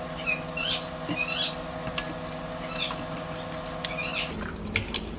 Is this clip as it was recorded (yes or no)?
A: yes